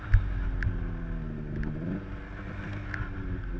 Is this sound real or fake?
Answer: real